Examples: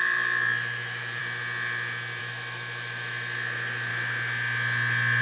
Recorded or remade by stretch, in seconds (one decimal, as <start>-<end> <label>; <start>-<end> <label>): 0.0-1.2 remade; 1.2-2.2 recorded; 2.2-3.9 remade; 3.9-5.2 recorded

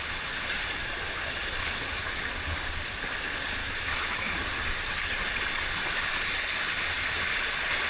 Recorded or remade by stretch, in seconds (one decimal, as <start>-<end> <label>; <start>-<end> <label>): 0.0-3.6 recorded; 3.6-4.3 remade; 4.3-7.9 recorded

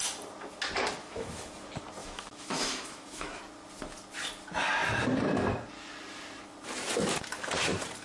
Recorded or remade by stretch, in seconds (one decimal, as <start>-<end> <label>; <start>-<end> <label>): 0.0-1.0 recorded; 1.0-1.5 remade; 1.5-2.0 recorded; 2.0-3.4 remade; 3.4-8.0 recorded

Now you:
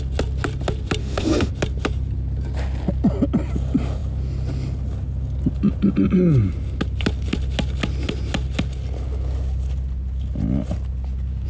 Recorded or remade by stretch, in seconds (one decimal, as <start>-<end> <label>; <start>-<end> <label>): 0.0-1.0 recorded; 1.0-1.5 remade; 1.5-11.5 recorded

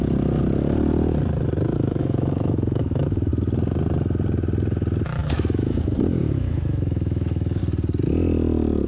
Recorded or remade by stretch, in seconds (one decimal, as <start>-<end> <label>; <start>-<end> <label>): 0.0-1.7 recorded; 1.7-3.3 remade; 3.3-5.2 recorded; 5.2-5.8 remade; 5.8-6.2 recorded; 6.2-7.6 remade; 7.6-8.9 recorded

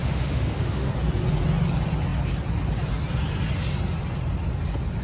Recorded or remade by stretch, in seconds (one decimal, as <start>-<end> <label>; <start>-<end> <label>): 0.0-0.9 remade; 0.9-5.0 recorded

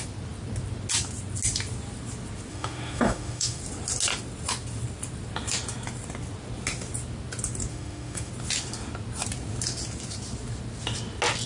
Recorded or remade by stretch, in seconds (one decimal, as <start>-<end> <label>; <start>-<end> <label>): 0.0-2.5 recorded; 2.5-3.6 remade; 3.6-7.7 recorded; 7.7-8.3 remade; 8.3-11.5 recorded